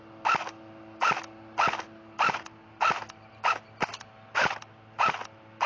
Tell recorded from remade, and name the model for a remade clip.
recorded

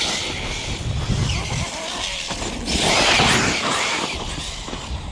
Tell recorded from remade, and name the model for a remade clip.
recorded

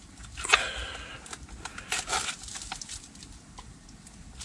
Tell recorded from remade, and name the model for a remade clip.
recorded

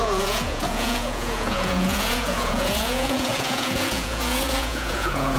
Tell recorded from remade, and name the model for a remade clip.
remade, vocoder, Vocos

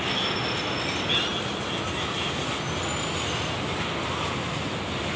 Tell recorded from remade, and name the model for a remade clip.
recorded